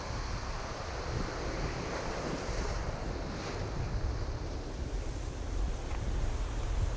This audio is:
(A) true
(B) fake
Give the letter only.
A